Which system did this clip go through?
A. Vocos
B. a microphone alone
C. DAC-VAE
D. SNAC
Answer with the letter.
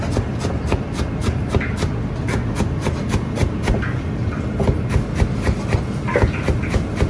B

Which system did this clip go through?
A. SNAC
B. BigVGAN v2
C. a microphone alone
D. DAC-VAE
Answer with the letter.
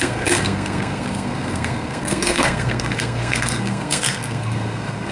A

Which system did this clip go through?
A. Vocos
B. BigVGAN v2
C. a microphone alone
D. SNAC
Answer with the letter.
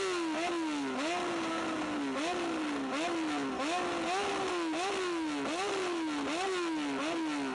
C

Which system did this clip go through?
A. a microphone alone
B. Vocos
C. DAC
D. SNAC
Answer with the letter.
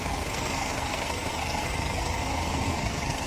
D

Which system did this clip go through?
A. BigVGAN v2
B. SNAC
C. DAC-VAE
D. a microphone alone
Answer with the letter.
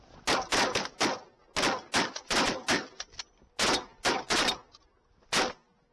D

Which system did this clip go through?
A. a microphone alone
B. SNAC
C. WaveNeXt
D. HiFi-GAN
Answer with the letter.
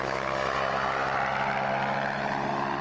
A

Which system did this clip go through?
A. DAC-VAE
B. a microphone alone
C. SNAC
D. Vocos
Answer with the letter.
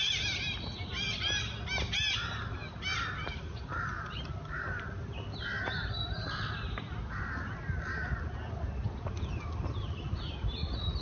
B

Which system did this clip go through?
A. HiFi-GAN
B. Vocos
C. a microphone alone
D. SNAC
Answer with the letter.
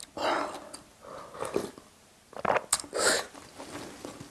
C